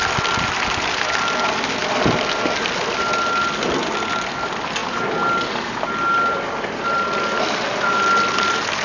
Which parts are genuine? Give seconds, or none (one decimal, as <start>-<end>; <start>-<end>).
0.0-8.8